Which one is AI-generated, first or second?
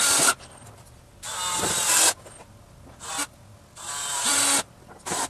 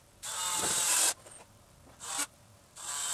second